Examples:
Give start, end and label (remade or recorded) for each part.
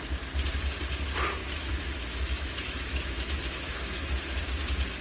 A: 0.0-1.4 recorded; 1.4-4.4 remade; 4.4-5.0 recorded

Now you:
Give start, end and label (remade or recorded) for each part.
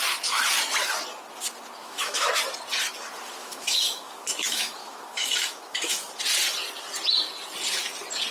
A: 0.0-1.8 recorded; 1.8-2.3 remade; 2.3-3.4 recorded; 3.4-6.1 remade; 6.1-8.3 recorded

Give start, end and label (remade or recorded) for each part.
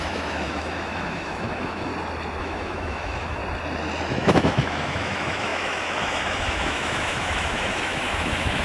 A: 0.0-1.9 remade; 1.9-2.4 recorded; 2.4-3.4 remade; 3.4-4.1 recorded; 4.1-8.6 remade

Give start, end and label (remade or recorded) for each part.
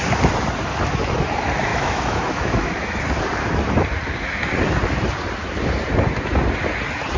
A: 0.0-1.7 recorded; 1.7-3.0 remade; 3.0-7.2 recorded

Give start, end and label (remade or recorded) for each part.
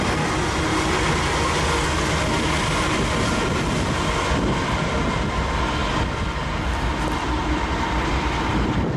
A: 0.0-9.0 recorded